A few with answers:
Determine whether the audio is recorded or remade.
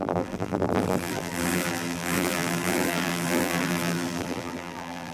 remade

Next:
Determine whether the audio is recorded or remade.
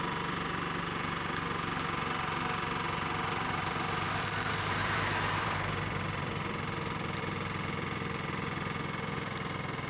remade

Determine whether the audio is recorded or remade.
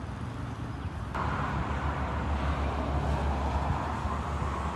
recorded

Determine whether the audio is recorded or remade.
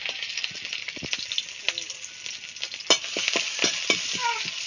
remade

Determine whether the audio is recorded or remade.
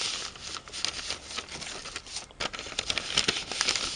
remade